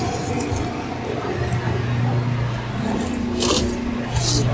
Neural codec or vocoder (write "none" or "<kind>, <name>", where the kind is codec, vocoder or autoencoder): none